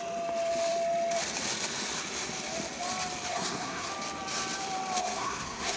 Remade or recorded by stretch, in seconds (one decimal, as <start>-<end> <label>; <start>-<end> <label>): 0.0-3.3 recorded; 3.3-3.9 remade; 3.9-5.0 recorded; 5.0-5.8 remade